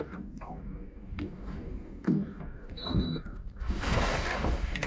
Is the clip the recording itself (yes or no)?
no